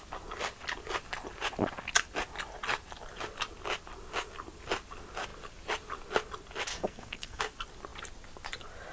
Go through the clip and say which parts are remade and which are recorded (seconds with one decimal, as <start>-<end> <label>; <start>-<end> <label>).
0.0-6.7 recorded; 6.7-7.4 remade; 7.4-8.9 recorded